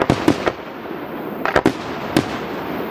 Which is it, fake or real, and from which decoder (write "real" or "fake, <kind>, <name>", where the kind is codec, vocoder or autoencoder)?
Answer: real